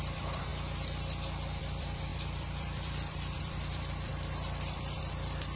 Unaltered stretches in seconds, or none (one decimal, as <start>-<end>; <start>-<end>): 0.5-1.6